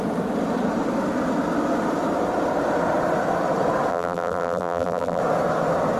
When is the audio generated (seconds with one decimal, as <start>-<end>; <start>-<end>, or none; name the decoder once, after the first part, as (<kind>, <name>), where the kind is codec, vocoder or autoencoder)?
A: 3.9-5.2 (vocoder, BigVGAN v2)